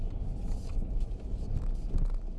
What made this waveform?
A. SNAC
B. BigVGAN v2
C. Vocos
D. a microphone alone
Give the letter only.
D